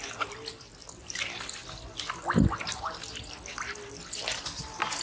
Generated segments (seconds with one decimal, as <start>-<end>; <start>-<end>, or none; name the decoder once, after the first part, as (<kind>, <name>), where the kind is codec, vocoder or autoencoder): none